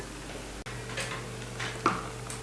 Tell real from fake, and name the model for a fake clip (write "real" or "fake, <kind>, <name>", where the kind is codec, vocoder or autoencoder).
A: real